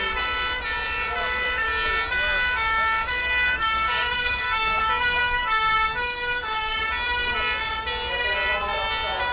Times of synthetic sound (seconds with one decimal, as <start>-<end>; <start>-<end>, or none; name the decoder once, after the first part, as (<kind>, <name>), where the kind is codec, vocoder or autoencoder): 3.2-4.8 (codec, DAC); 5.2-6.8